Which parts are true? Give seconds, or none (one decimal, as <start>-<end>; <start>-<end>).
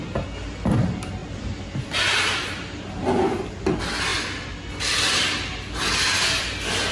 0.0-6.9